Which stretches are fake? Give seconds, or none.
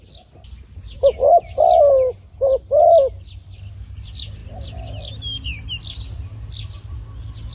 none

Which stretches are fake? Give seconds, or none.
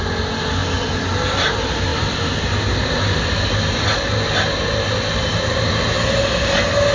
none